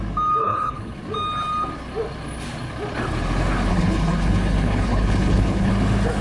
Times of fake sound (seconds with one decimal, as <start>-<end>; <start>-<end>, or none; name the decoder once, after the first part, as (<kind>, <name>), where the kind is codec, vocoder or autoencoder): 0.4-1.0 (codec, HILCodec); 3.7-5.7